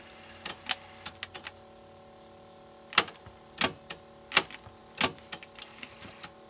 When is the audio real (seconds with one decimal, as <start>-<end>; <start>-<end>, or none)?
0.0-6.5